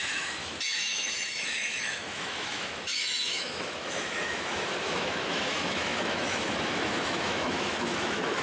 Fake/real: fake